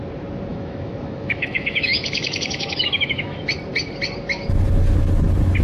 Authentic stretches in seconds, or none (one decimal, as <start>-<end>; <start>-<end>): 0.0-0.5; 3.5-5.6